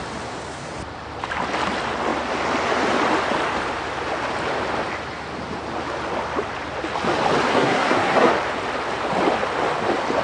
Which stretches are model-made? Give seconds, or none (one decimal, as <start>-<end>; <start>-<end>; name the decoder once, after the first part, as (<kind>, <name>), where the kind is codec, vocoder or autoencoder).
7.5-8.3 (codec, SNAC)